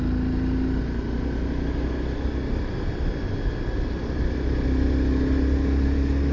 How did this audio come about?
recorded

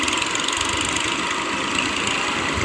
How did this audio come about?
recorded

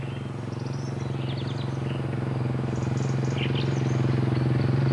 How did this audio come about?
recorded